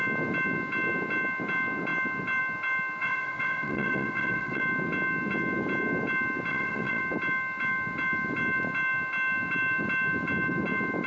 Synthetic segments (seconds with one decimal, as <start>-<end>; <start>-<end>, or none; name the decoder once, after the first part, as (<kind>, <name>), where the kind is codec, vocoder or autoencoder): 3.0-4.6 (vocoder, WaveNeXt); 6.5-7.0